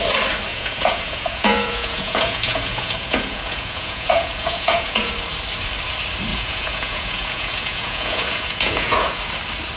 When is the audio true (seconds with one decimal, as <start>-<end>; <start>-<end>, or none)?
0.0-0.5; 5.1-6.3; 9.2-9.8